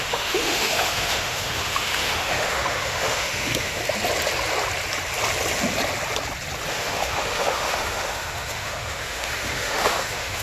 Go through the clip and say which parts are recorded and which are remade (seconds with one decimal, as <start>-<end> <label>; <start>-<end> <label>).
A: 0.0-3.8 remade; 3.8-6.7 recorded; 6.7-10.4 remade